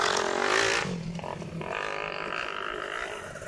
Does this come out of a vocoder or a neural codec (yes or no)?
no